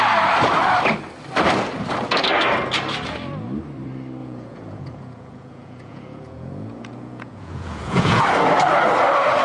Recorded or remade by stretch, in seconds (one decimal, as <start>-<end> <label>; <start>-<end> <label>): 0.0-4.2 recorded; 4.2-8.2 remade; 8.2-9.4 recorded

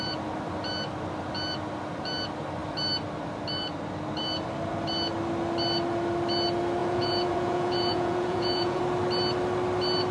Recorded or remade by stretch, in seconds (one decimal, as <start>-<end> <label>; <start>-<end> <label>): 0.0-6.8 recorded; 6.8-8.8 remade; 8.8-10.1 recorded

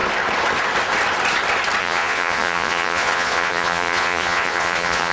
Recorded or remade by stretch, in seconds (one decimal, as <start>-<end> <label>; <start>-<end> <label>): 0.0-1.8 recorded; 1.8-5.1 remade

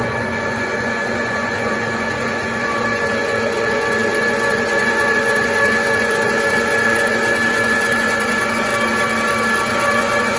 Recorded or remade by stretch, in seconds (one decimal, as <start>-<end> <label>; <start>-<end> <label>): 0.0-8.7 remade; 8.7-9.7 recorded; 9.7-10.4 remade

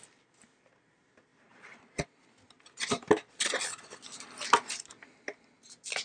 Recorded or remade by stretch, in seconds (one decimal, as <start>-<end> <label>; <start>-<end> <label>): 0.0-6.0 recorded

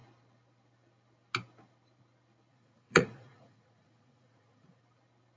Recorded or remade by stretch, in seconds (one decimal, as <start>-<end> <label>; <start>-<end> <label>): 0.0-2.5 recorded; 2.5-4.8 remade; 4.8-5.4 recorded

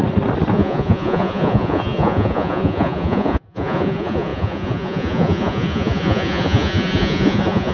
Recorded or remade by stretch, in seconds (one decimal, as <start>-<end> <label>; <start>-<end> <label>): 0.0-0.5 recorded; 0.5-7.7 remade

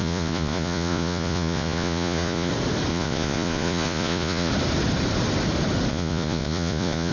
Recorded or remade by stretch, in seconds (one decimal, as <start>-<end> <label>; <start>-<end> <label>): 0.0-2.5 remade; 2.5-2.9 recorded; 2.9-4.5 remade; 4.5-5.9 recorded; 5.9-7.1 remade